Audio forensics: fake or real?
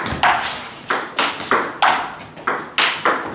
real